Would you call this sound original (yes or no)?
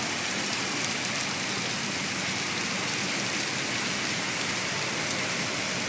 yes